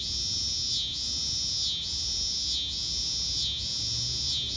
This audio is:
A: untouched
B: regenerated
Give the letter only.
A